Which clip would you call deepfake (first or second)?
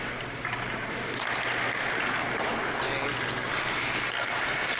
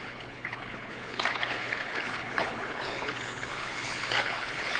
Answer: second